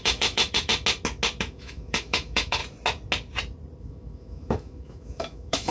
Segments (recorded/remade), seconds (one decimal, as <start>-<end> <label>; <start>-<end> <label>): 0.0-0.7 remade; 0.7-1.4 recorded; 1.4-2.6 remade; 2.6-3.8 recorded; 3.8-5.7 remade